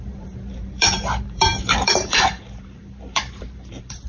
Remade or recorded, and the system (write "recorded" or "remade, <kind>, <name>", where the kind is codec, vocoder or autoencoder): remade, vocoder, BigVGAN v2